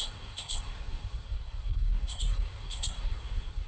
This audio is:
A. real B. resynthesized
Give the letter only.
B